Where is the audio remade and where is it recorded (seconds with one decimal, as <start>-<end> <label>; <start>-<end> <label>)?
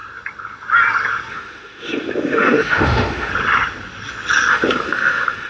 0.0-1.3 recorded; 1.3-3.3 remade; 3.3-4.5 recorded; 4.5-5.5 remade